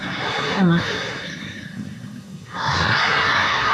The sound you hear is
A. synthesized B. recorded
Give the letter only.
A